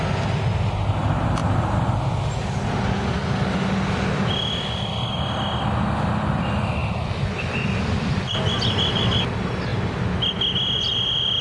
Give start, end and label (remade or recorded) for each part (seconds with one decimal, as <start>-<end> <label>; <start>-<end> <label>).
0.0-11.4 recorded